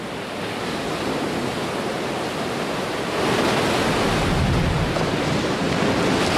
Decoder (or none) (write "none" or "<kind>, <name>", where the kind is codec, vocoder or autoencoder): none